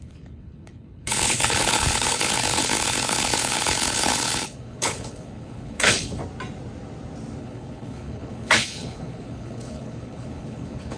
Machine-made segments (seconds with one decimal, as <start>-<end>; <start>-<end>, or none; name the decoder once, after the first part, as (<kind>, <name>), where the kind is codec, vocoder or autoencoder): 0.0-6.2 (codec, HILCodec); 7.4-11.0